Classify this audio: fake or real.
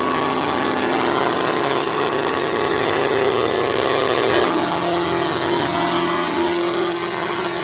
fake